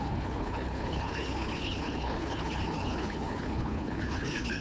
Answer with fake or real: fake